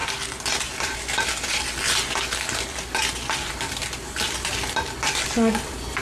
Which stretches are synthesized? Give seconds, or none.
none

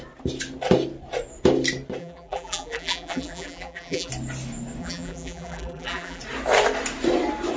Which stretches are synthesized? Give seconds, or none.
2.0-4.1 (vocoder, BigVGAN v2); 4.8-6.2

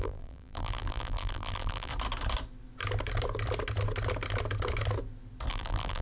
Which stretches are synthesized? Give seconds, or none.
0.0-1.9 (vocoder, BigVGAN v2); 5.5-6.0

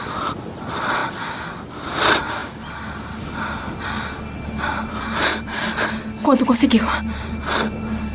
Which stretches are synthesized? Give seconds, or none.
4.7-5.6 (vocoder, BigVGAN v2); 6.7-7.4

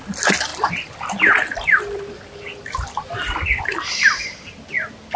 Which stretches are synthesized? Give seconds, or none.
0.0-5.2 (vocoder, BigVGAN v2)

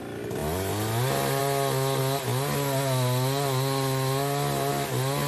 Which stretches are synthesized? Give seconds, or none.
none

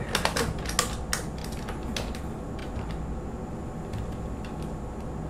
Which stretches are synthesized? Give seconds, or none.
none